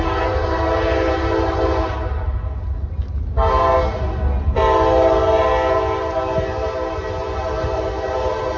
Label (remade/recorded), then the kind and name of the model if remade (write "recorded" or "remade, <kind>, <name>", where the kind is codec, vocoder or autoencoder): recorded